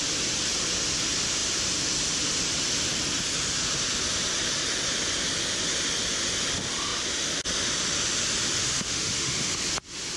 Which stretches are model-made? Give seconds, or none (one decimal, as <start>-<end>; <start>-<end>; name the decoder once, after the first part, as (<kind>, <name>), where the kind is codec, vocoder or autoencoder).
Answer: 8.6-9.5 (autoencoder, DAC-VAE)